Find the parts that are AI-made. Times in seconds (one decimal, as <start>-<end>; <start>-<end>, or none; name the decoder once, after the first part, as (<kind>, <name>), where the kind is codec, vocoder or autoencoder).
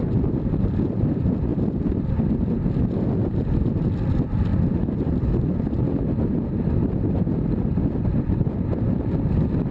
1.5-2.3 (vocoder, BigVGAN v2); 4.5-9.7